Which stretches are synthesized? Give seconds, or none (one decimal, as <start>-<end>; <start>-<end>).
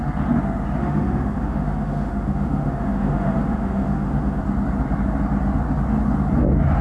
0.8-4.4